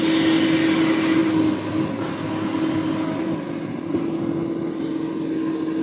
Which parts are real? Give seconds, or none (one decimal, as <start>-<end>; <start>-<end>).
0.0-5.8